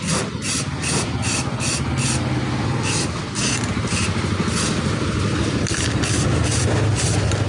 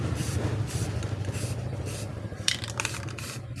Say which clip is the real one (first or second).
first